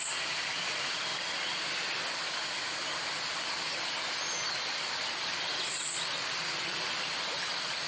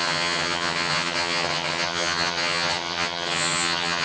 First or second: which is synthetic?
second